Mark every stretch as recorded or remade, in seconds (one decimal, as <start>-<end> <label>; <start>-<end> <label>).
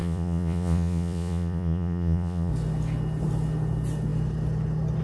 0.0-2.5 remade; 2.5-5.0 recorded